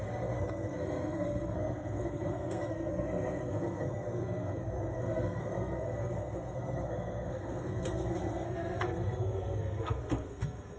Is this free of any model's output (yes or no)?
no